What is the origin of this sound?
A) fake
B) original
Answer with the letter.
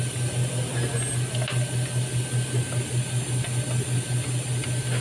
B